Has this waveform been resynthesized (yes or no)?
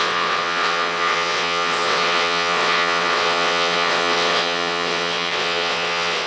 yes